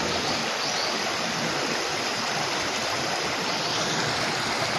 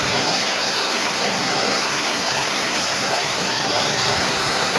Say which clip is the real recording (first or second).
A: first